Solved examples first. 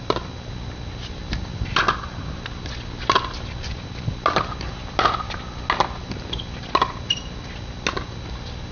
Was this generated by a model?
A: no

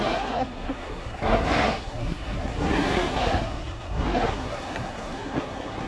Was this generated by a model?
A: yes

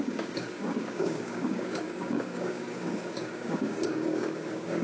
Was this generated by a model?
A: yes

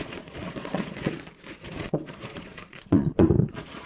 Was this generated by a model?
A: yes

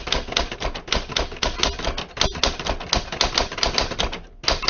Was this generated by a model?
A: no